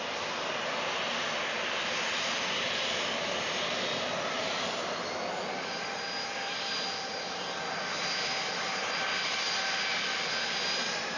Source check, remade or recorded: recorded